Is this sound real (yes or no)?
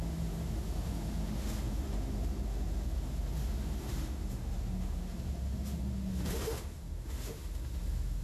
no